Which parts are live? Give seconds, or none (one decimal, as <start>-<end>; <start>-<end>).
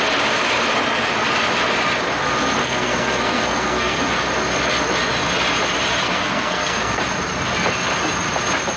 0.0-2.6; 4.0-6.0; 7.0-8.8